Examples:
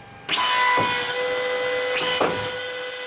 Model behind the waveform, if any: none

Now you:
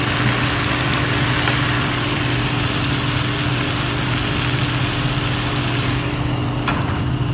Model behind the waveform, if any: none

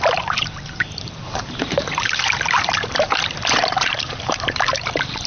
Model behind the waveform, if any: vocoder, BigVGAN v2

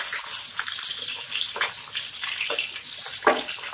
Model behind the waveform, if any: none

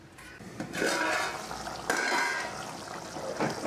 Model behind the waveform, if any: none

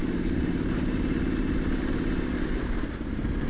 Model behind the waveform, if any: none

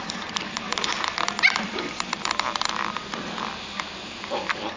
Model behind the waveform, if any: vocoder, BigVGAN v2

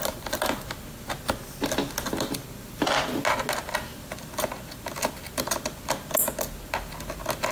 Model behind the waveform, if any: none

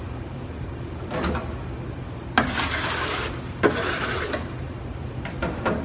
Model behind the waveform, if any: none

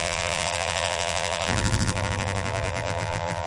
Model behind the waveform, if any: vocoder, BigVGAN v2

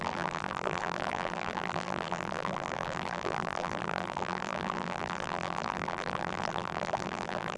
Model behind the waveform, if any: vocoder, BigVGAN v2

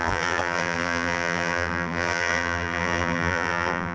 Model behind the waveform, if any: vocoder, BigVGAN v2